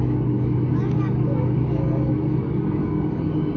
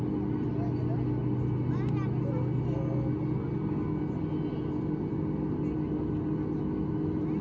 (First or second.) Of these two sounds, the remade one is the first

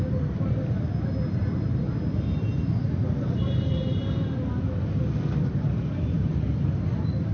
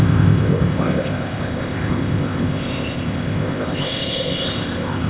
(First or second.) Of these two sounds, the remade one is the second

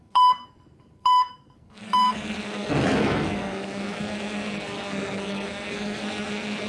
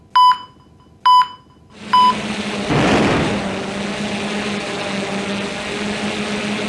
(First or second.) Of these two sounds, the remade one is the first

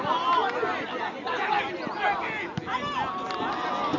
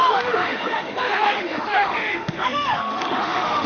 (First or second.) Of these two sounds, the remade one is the second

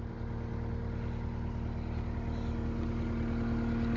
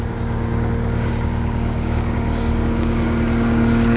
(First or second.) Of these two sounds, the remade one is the second